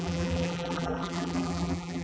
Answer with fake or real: fake